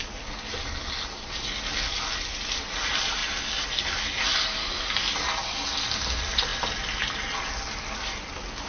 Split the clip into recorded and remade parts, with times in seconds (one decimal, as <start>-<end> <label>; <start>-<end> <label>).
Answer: 0.0-8.7 recorded